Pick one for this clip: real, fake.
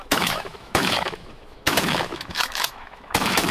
fake